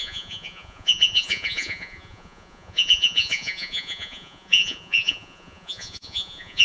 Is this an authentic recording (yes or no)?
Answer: no